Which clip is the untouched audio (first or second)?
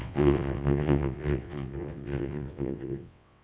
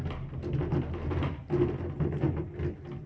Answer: second